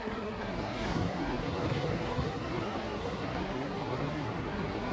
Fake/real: fake